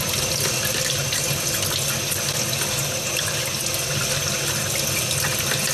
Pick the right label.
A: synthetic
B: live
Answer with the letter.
B